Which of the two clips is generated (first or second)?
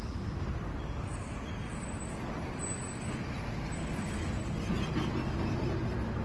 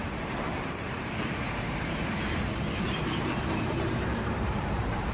second